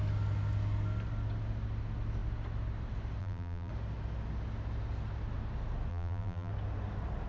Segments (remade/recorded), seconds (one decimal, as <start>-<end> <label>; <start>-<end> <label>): 0.0-3.2 recorded; 3.2-3.7 remade; 3.7-5.9 recorded; 5.9-6.5 remade; 6.5-7.3 recorded